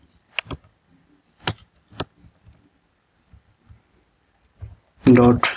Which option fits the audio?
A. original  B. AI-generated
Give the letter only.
A